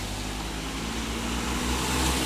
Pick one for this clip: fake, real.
real